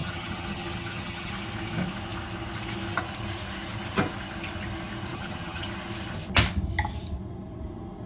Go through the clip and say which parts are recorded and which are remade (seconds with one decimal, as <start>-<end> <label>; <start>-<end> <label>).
0.0-1.3 remade; 1.3-5.1 recorded; 5.1-5.7 remade; 5.7-8.1 recorded